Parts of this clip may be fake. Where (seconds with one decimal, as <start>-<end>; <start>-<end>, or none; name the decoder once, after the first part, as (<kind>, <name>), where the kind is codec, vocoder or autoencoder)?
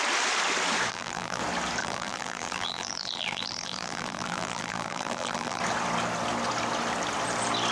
0.9-1.4 (vocoder, BigVGAN v2); 1.8-5.6